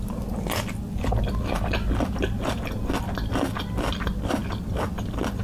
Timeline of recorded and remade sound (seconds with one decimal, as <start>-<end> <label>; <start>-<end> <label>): 0.0-5.4 recorded